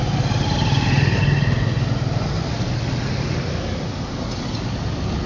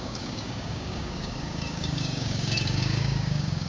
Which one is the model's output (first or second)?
second